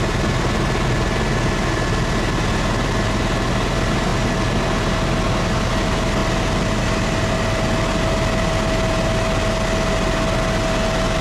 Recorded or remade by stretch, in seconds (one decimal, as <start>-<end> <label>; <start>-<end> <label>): 0.0-11.2 recorded